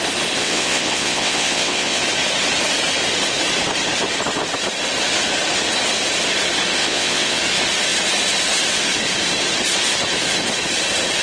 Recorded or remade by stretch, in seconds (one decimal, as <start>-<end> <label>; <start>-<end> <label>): 0.0-0.4 recorded; 0.4-2.0 remade; 2.0-6.8 recorded; 6.8-7.4 remade; 7.4-11.2 recorded